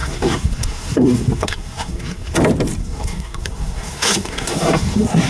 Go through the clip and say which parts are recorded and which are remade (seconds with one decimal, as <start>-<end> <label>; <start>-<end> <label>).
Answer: 0.0-2.4 remade; 2.4-2.8 recorded; 2.8-5.3 remade